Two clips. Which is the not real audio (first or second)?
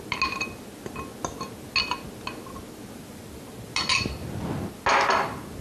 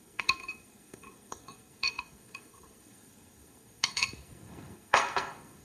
second